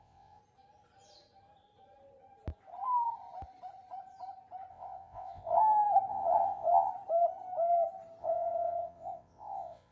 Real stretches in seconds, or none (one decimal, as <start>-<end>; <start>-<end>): 0.4-4.7; 5.6-6.1; 6.9-8.2